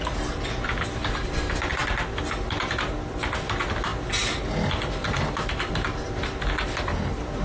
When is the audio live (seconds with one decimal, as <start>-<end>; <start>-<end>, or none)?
0.0-7.4